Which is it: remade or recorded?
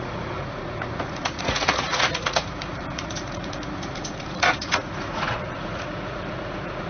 remade